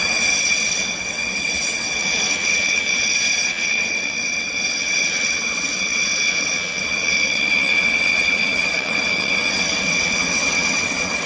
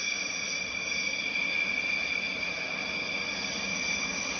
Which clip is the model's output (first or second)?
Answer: first